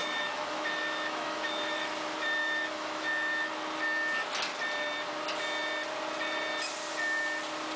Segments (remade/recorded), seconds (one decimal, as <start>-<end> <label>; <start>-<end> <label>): 0.0-1.9 remade; 1.9-2.4 recorded; 2.4-3.5 remade; 3.5-7.8 recorded